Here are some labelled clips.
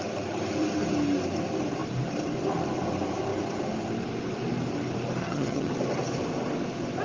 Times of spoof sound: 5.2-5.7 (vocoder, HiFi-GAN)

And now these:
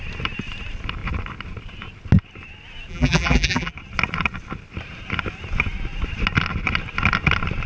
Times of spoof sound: 2.9-3.7 (vocoder, BigVGAN v2)

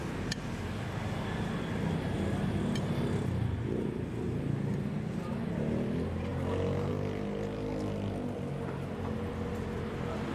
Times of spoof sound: none

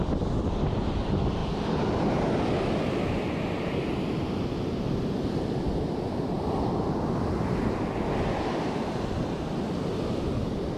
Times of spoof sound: none

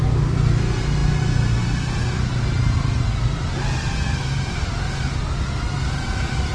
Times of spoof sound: none

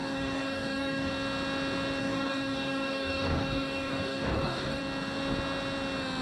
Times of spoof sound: 0.0-1.1 (codec, DAC); 2.0-4.8

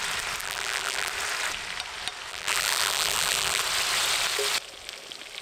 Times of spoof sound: 0.4-1.1 (vocoder, BigVGAN v2); 2.3-3.6